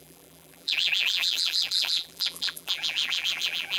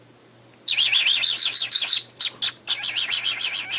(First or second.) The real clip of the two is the second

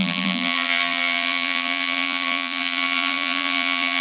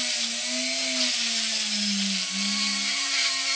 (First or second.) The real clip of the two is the second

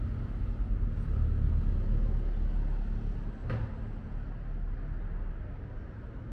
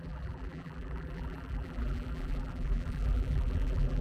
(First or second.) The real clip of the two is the first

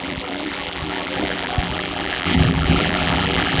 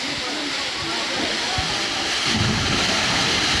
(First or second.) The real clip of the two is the second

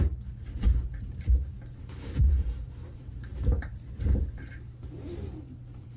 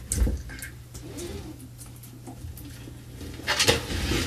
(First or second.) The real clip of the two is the second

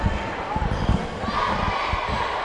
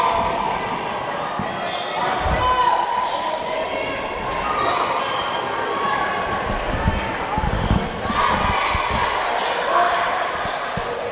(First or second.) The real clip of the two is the second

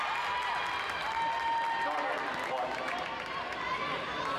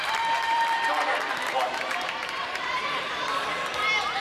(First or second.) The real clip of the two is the first